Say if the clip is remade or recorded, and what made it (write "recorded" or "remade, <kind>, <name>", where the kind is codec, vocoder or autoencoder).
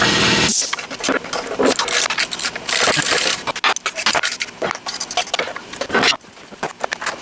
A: recorded